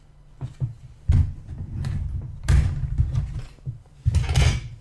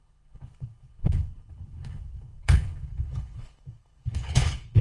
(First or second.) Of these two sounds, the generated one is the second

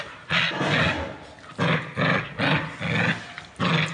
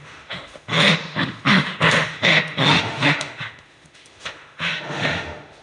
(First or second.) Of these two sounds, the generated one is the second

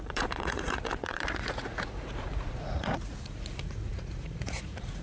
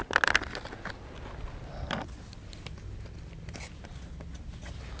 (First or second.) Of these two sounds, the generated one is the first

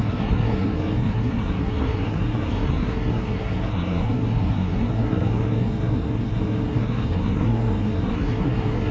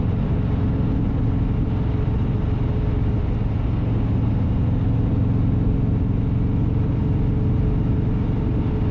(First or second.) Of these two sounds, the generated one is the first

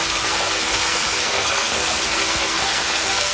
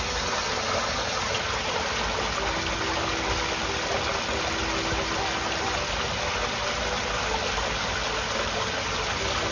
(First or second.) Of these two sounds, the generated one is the first